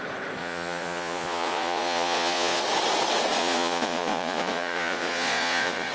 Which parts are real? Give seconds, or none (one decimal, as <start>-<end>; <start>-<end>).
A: 0.0-0.4; 2.6-3.4